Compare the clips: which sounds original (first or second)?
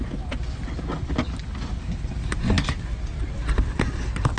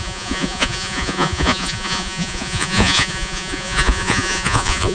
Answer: first